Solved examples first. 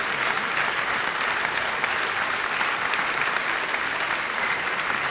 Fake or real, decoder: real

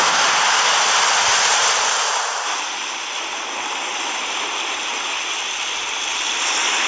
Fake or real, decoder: real